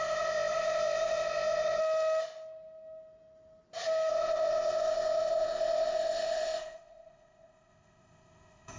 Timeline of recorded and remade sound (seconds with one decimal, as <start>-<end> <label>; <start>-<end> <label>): 0.0-1.8 remade; 1.8-4.1 recorded; 4.1-8.8 remade